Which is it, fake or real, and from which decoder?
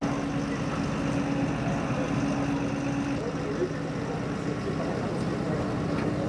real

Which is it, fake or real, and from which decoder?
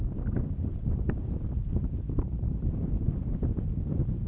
real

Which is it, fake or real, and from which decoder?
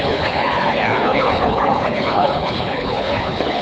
fake, codec, HILCodec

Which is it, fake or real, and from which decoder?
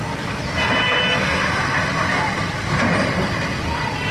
real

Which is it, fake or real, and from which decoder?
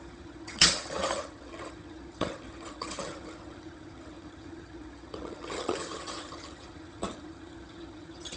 fake, vocoder, HiFi-GAN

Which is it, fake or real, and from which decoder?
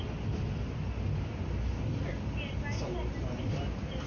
real